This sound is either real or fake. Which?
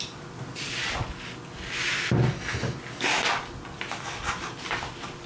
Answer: real